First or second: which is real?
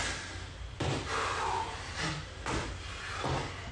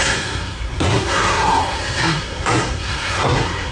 first